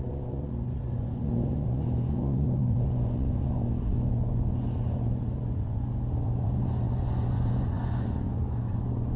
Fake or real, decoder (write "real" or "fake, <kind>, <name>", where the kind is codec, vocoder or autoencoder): fake, vocoder, Vocos